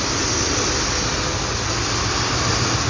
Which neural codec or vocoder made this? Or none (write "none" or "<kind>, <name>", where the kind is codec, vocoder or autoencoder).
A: none